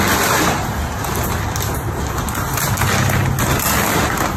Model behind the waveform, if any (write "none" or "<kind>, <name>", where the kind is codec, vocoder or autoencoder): none